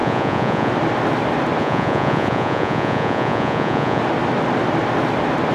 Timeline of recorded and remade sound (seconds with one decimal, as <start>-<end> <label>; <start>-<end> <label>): 0.0-0.7 remade; 0.7-1.6 recorded; 1.6-4.0 remade; 4.0-5.5 recorded